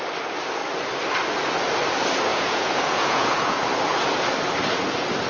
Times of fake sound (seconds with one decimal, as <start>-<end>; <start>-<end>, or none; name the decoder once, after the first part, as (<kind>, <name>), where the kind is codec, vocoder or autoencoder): 2.3-3.6 (vocoder, Vocos)

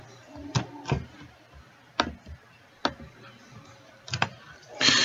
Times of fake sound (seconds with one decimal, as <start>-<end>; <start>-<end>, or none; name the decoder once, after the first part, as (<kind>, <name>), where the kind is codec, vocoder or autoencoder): 0.0-1.8 (vocoder, BigVGAN v2); 3.8-5.0